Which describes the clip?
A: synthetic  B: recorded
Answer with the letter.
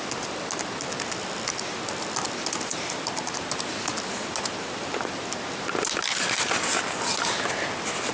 B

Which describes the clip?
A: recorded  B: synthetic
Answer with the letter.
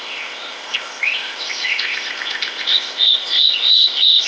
B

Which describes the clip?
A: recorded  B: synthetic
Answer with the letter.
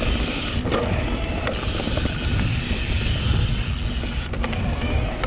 A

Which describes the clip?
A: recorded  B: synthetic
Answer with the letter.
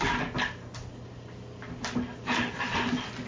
A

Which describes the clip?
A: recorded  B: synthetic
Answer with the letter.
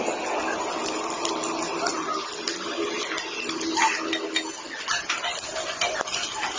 A